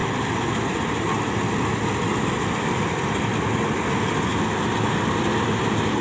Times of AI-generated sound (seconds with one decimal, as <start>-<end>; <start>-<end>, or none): none